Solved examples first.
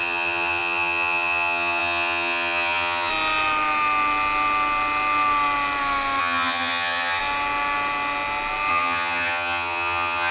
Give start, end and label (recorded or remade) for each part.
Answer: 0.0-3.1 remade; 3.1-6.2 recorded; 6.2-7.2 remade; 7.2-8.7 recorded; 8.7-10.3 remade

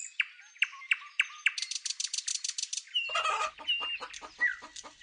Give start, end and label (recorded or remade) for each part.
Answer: 0.0-5.0 recorded